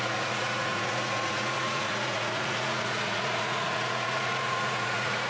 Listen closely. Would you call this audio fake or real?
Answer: fake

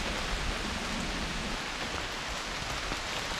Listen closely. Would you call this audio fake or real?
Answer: real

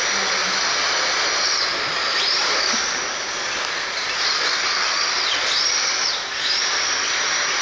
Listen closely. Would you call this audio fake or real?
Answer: real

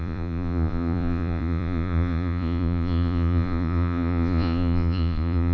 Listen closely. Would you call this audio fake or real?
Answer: fake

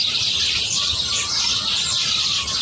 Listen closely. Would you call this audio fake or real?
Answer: real